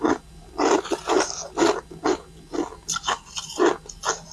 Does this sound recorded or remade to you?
recorded